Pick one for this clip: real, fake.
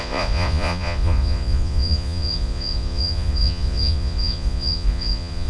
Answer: fake